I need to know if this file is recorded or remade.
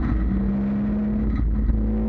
recorded